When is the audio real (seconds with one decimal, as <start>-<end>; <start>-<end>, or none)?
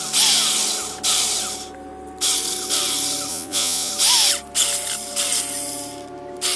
0.0-3.3; 3.9-6.6